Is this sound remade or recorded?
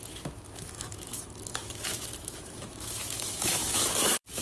remade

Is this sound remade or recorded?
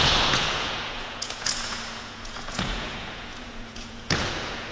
remade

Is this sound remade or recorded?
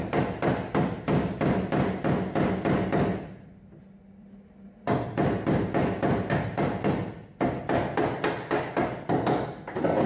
recorded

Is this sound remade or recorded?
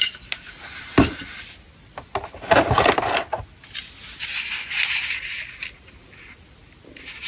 recorded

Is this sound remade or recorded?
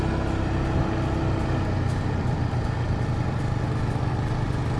recorded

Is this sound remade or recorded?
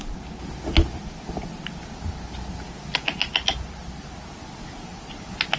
recorded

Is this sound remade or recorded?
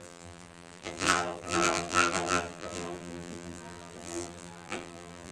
remade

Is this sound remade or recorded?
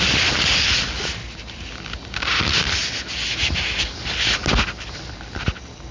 recorded